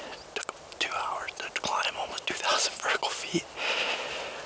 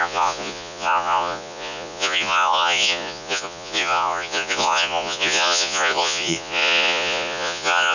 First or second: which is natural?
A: first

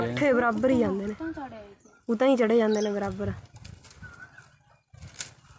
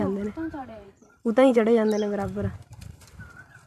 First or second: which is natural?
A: first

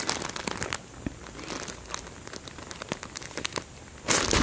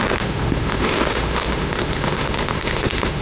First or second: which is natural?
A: first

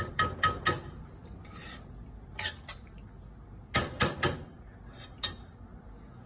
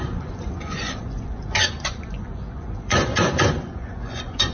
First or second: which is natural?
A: first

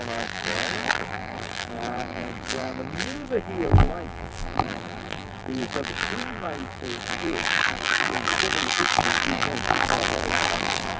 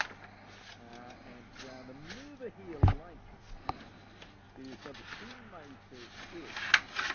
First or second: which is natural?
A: second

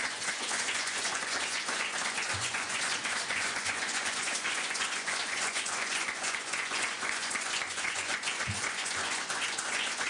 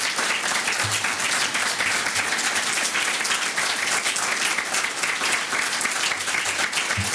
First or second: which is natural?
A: second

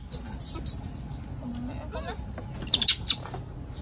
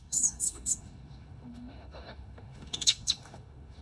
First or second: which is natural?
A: first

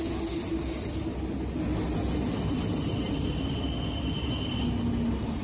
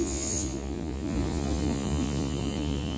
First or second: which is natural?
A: first